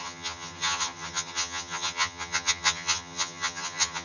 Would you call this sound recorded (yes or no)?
no